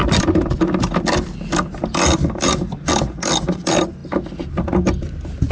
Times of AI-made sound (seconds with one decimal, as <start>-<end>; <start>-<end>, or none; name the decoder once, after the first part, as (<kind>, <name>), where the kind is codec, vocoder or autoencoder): none